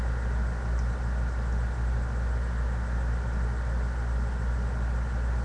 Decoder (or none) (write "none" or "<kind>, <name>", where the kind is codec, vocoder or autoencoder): none